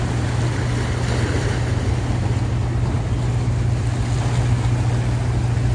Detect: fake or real real